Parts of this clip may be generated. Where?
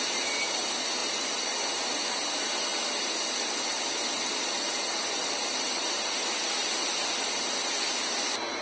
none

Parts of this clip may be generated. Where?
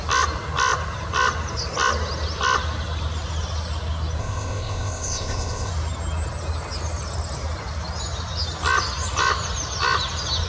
4.2-5.7 (codec, ZipCodec)